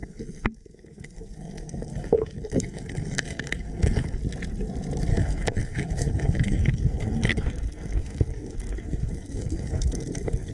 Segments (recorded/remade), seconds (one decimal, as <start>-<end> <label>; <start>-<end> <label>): 0.0-4.2 remade; 4.2-5.1 recorded; 5.1-10.5 remade